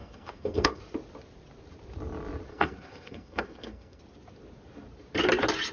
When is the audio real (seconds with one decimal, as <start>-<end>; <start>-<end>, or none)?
0.8-2.5; 4.0-5.7